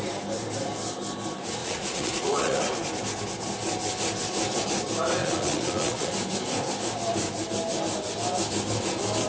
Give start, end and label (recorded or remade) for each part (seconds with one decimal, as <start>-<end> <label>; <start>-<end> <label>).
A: 0.0-1.6 recorded; 1.6-2.6 remade; 2.6-5.2 recorded; 5.2-6.1 remade; 6.1-9.3 recorded